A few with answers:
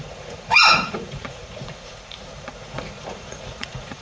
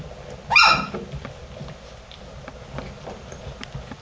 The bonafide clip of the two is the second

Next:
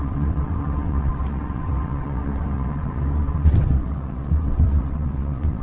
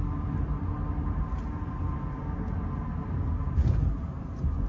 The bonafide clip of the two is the second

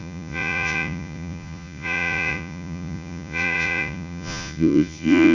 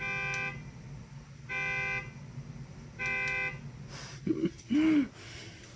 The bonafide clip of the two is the second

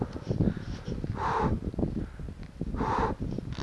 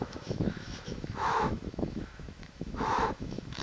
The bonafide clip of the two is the first